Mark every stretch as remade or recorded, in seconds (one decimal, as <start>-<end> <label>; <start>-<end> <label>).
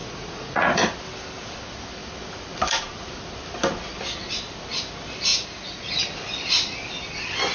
0.0-0.8 remade; 0.8-5.3 recorded; 5.3-5.9 remade; 5.9-7.5 recorded